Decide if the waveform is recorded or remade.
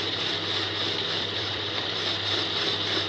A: remade